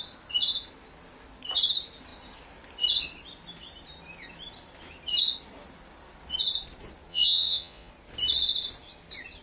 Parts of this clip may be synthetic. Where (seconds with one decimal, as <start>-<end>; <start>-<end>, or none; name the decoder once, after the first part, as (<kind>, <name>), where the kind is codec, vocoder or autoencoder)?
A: 7.1-7.9 (vocoder, Vocos)

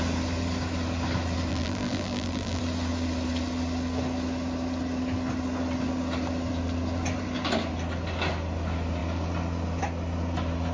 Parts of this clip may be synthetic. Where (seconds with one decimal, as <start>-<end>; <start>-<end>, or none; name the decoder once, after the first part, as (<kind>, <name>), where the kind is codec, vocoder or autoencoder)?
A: 1.5-2.6 (vocoder, BigVGAN v2)